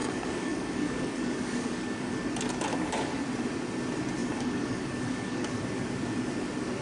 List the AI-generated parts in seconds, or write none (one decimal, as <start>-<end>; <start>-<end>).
0.0-2.2; 2.7-3.2; 4.2-5.6